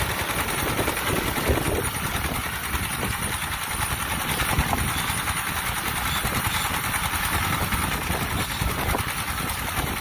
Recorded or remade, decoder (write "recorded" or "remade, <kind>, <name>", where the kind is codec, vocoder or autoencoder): recorded